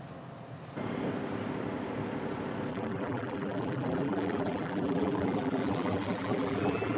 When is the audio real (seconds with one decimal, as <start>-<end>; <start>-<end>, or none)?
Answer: 0.0-2.7